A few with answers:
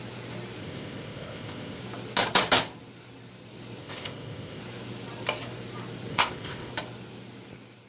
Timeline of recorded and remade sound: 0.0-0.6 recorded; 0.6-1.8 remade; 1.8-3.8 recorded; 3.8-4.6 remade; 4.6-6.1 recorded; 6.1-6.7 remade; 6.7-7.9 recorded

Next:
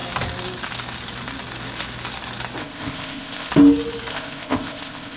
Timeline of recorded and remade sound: 0.0-2.6 recorded; 2.6-3.5 remade; 3.5-4.1 recorded; 4.1-5.2 remade